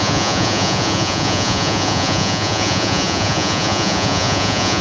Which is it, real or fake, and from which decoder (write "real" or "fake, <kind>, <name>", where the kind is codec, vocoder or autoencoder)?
fake, vocoder, Vocos